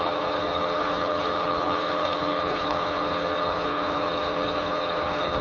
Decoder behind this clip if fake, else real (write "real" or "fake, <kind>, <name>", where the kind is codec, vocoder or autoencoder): fake, codec, HILCodec